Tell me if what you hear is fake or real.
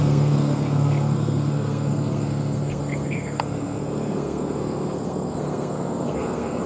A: fake